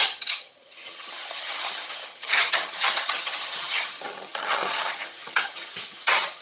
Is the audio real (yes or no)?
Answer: no